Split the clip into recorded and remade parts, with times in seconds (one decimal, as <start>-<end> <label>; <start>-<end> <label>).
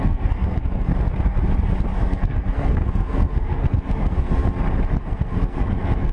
0.0-0.9 remade; 0.9-2.0 recorded; 2.0-4.3 remade; 4.3-5.0 recorded; 5.0-6.1 remade